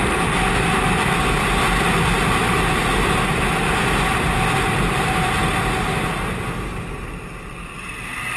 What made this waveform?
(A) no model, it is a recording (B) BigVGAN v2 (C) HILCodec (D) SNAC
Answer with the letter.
A